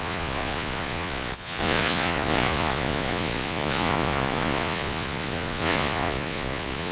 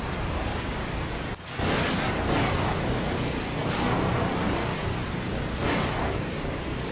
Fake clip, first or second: first